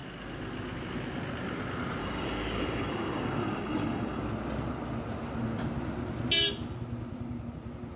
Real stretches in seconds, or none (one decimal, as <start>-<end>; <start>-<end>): 0.0-2.0; 4.2-8.0